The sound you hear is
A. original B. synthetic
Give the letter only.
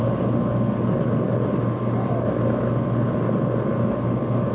A